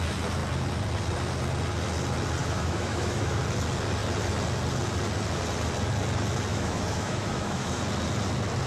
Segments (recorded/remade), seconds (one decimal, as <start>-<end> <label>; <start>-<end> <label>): 0.0-2.4 recorded; 2.4-3.4 remade; 3.4-6.5 recorded; 6.5-7.8 remade; 7.8-8.7 recorded